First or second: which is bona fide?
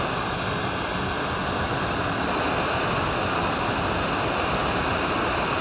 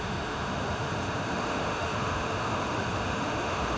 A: first